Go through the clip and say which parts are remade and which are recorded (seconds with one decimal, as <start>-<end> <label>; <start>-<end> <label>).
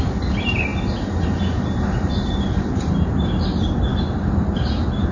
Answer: 0.0-5.1 recorded